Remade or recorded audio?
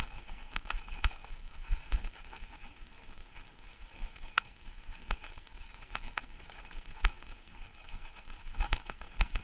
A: remade